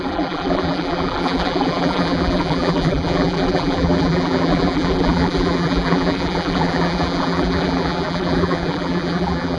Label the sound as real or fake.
fake